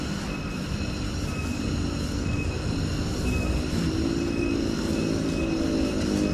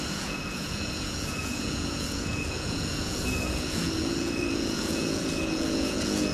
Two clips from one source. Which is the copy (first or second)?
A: second